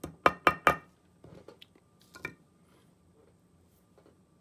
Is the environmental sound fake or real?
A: real